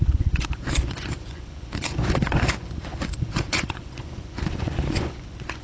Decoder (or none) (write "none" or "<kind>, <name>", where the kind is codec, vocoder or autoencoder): vocoder, Vocos